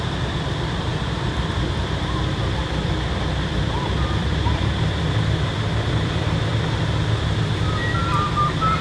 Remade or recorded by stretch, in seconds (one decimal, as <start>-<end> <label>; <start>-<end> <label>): 0.0-8.8 remade